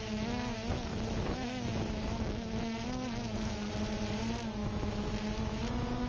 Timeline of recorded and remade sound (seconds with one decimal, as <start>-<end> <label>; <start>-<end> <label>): 0.0-3.7 remade; 3.7-4.6 recorded; 4.6-6.1 remade